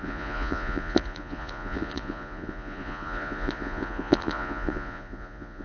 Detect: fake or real fake